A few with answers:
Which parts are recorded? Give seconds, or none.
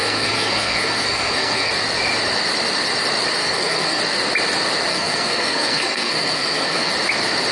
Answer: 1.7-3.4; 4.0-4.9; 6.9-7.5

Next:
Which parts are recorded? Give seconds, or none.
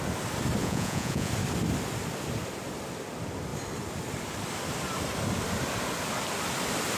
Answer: 0.0-0.6; 1.3-7.0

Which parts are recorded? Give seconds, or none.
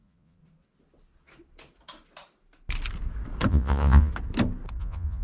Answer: 0.4-3.5; 4.1-4.8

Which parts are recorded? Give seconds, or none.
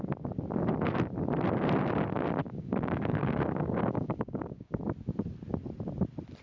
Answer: 0.0-2.4; 4.8-6.4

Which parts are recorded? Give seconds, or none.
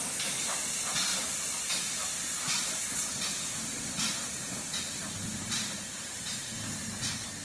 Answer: 0.0-1.1; 1.7-2.1; 6.4-7.4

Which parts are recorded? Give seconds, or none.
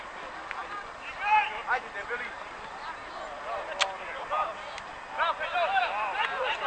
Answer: 0.0-6.7